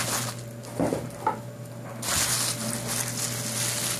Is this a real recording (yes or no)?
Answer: yes